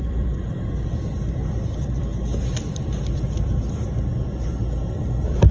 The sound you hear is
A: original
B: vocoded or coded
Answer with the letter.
B